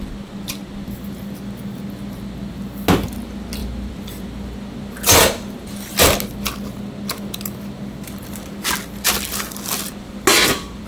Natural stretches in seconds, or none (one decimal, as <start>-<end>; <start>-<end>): 0.0-3.6; 4.3-10.3